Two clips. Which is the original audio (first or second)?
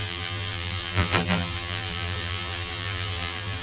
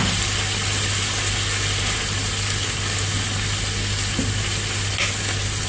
second